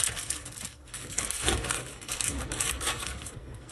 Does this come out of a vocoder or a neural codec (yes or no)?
yes